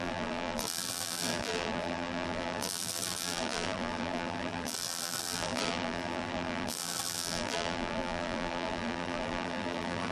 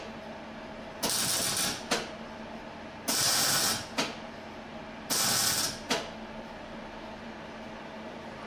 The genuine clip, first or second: second